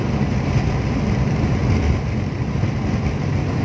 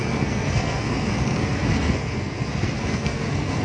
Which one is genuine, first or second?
first